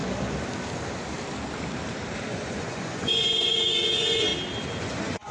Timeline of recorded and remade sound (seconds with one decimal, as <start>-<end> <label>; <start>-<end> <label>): 0.0-2.3 recorded; 2.3-4.3 remade; 4.3-4.8 recorded; 4.8-5.3 remade